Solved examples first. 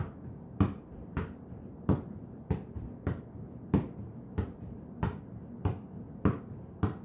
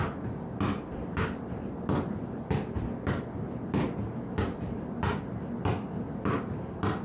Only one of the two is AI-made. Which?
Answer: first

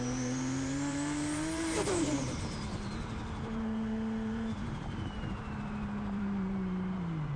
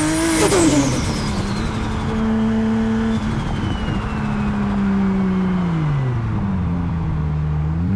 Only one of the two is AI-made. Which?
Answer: first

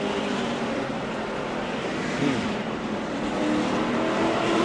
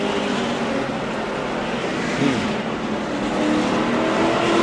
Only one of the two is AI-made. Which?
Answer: first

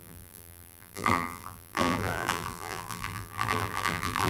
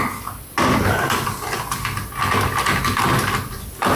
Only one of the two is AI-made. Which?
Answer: first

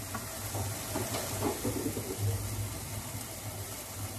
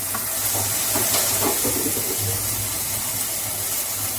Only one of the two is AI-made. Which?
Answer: first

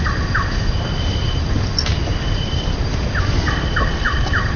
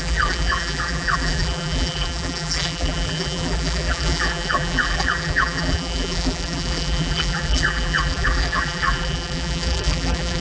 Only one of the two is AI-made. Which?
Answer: second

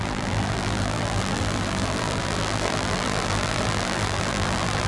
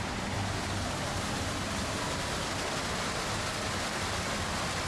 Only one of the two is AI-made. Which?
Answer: first